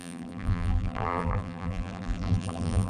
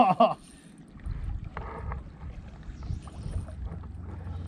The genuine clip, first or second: second